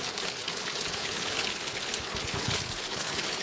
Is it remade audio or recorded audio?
remade